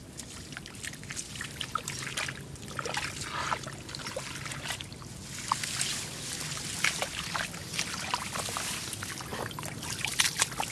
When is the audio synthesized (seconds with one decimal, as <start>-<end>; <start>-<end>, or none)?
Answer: none